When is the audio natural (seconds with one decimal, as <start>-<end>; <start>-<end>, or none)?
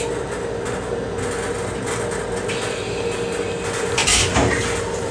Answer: 0.0-4.0